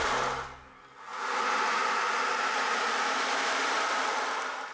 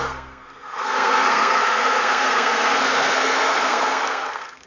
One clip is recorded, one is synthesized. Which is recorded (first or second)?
first